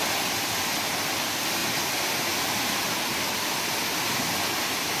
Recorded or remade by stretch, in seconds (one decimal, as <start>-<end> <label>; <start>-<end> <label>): 0.0-5.0 recorded